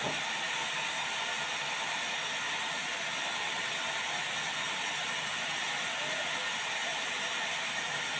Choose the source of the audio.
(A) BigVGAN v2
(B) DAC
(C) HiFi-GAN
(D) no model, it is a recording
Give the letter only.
D